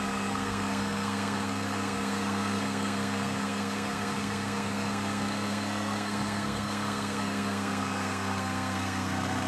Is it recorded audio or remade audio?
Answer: remade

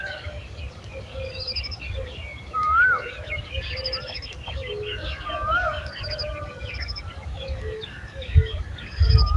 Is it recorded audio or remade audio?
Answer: remade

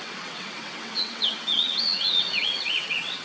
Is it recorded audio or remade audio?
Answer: remade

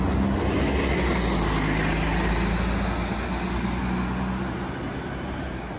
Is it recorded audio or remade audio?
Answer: recorded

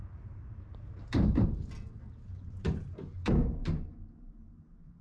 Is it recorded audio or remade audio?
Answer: remade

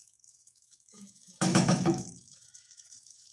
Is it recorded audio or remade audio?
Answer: remade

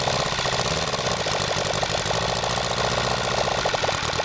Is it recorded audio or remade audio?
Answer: recorded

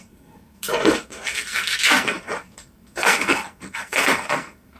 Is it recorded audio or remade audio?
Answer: remade